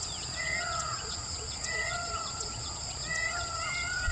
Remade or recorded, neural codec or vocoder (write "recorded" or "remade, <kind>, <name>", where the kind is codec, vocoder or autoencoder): remade, vocoder, Vocos